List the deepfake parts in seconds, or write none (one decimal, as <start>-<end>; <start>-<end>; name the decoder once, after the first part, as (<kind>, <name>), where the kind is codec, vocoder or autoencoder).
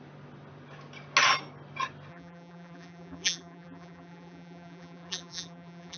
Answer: 2.1-6.0 (vocoder, BigVGAN v2)